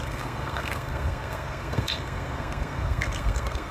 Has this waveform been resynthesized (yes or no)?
yes